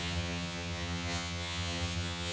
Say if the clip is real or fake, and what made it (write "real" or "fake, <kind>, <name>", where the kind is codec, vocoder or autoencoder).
fake, vocoder, HiFi-GAN